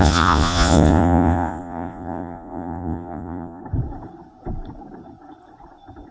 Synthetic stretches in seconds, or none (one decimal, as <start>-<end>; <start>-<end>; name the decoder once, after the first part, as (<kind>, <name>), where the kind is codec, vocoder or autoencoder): 0.0-3.6 (vocoder, Vocos)